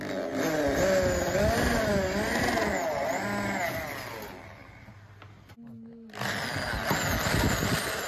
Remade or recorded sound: recorded